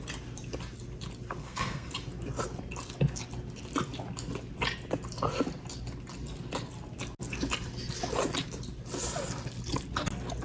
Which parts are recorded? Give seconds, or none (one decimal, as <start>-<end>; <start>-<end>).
0.0-1.4; 1.9-10.4